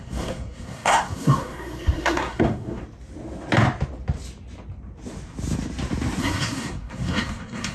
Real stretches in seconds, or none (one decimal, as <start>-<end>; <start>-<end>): 2.8-6.2